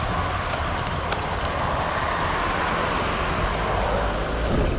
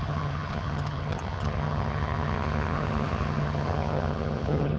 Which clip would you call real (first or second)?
first